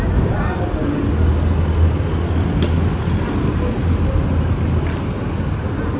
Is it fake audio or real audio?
real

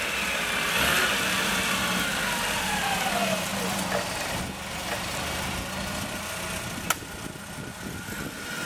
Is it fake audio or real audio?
real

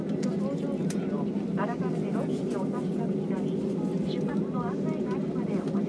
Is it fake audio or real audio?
real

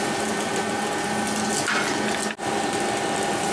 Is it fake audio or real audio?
real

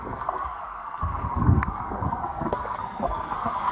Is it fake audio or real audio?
fake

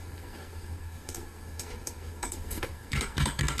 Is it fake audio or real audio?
fake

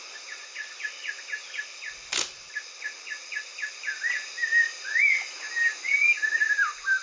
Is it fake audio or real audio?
real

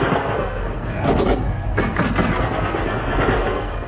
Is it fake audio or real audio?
fake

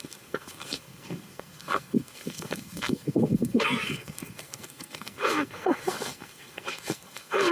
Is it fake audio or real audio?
fake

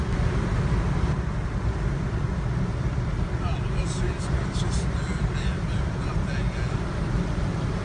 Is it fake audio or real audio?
real